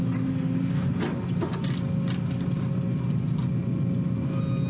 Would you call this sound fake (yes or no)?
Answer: no